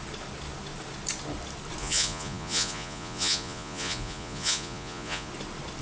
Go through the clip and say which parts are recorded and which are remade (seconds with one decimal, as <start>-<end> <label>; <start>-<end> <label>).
0.0-1.8 recorded; 1.8-5.3 remade; 5.3-5.8 recorded